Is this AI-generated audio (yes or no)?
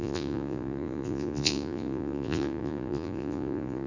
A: yes